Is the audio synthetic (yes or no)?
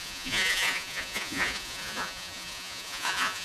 yes